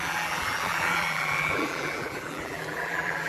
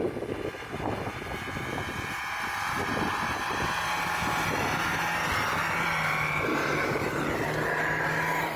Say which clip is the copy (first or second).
first